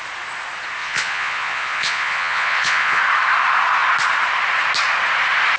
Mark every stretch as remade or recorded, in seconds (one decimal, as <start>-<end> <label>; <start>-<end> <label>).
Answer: 0.0-0.8 recorded; 0.8-3.0 remade; 3.0-5.6 recorded